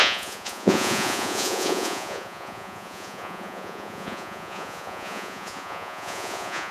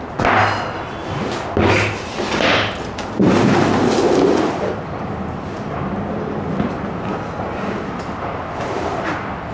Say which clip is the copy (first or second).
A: first